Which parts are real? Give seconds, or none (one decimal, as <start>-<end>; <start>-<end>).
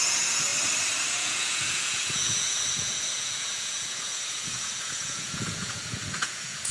0.5-1.1